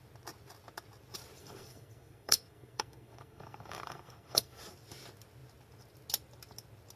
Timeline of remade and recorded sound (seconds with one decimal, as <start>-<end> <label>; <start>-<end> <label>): 0.0-1.4 recorded; 1.4-4.6 remade; 4.6-7.0 recorded